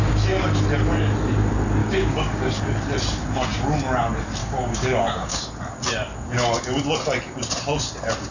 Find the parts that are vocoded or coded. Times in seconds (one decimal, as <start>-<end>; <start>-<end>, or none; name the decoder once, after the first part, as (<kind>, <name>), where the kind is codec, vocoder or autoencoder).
1.8-2.6 (codec, DAC); 4.4-5.4